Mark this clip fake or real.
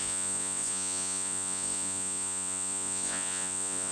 fake